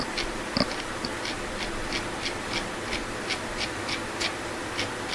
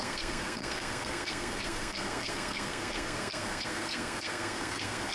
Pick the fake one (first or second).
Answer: second